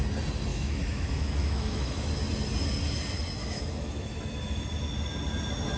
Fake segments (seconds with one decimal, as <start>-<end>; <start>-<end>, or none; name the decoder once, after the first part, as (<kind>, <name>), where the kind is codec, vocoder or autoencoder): 0.5-2.1 (autoencoder, DAC-VAE); 3.4-4.2